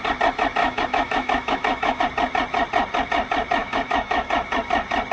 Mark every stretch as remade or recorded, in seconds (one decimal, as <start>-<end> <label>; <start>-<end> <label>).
0.0-0.6 recorded; 0.6-2.0 remade; 2.0-3.6 recorded; 3.6-4.3 remade; 4.3-5.1 recorded